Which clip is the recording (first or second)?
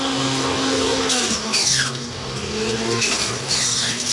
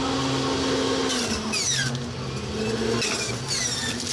second